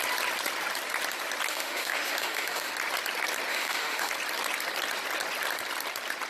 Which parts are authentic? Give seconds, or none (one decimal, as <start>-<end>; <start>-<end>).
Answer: 0.0-1.5; 2.7-3.5; 4.1-6.3